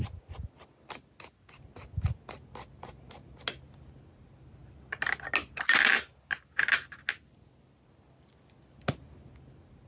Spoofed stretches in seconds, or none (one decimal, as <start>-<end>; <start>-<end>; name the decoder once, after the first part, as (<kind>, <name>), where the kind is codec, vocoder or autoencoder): none